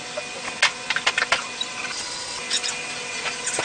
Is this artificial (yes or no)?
no